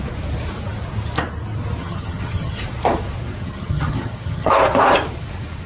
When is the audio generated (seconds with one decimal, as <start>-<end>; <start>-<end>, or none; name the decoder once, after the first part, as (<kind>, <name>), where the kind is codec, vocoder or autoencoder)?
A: 1.8-2.6 (vocoder, HiFi-GAN); 3.4-4.5